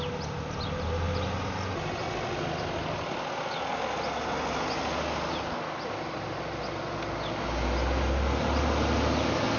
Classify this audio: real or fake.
real